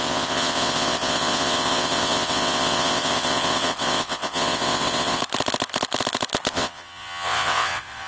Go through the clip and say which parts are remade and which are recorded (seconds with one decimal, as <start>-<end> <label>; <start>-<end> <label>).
0.0-5.2 remade; 5.2-6.5 recorded; 6.5-8.1 remade